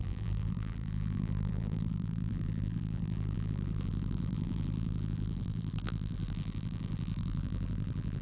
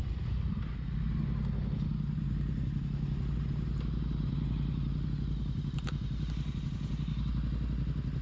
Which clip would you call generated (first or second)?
first